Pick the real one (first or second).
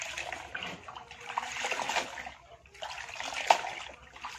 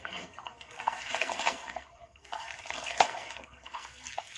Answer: first